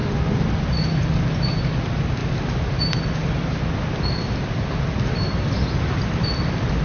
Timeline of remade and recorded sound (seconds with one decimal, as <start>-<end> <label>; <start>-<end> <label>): 0.0-6.8 recorded